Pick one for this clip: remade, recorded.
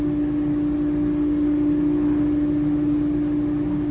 recorded